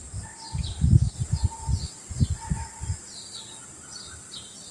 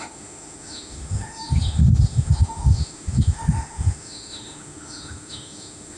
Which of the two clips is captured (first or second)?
first